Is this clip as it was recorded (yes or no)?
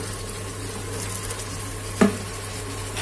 yes